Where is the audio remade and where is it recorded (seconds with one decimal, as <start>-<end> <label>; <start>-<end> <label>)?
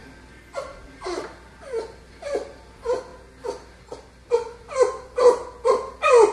0.0-6.3 recorded